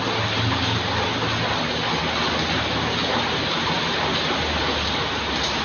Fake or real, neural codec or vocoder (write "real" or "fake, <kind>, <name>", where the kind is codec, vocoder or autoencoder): real